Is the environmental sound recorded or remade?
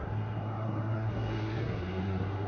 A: remade